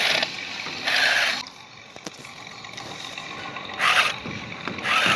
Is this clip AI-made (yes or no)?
no